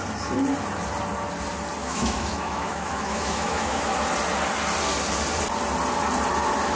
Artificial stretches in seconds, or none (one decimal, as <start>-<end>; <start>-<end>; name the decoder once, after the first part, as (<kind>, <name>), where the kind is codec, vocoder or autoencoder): 1.8-3.9 (autoencoder, DAC-VAE)